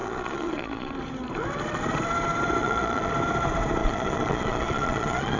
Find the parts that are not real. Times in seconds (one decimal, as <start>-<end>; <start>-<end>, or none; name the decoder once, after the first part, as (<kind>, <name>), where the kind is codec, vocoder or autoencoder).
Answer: 0.0-0.9 (vocoder, Vocos); 2.6-3.1; 3.8-5.4